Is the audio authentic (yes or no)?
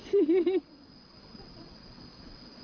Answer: no